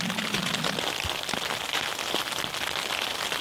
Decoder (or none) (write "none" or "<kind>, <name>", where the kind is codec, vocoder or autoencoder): none